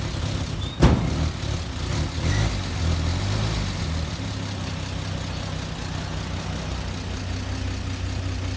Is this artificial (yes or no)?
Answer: no